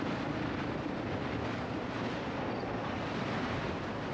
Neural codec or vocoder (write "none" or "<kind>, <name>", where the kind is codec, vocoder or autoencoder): none